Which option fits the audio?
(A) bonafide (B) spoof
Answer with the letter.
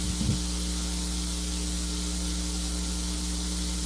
A